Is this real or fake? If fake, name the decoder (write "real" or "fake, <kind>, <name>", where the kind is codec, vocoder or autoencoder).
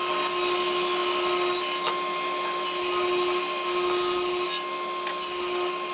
real